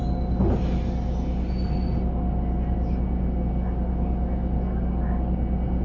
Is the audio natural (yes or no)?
yes